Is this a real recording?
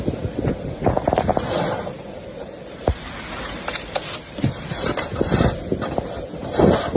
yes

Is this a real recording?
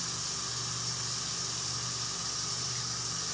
yes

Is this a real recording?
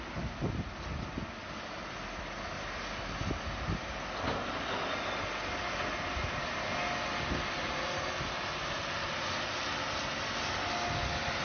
yes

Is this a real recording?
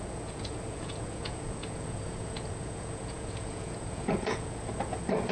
no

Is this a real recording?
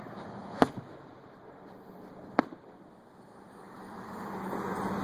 yes